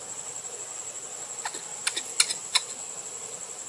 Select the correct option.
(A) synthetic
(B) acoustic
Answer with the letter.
B